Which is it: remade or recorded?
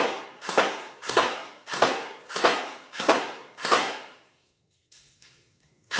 remade